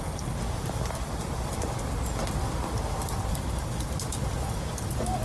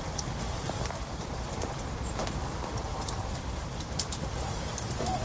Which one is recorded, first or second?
first